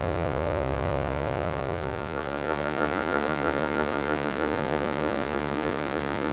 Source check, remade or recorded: remade